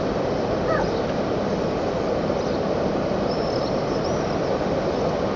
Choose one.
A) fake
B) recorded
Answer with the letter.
B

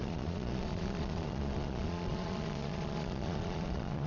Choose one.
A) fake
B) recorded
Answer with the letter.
A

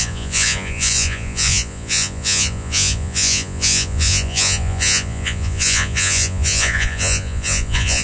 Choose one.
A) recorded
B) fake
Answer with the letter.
B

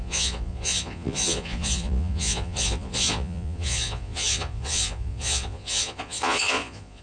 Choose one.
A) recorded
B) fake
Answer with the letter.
B